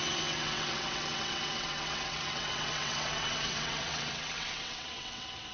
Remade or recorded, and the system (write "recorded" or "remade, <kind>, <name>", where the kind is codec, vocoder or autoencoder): remade, vocoder, WaveNeXt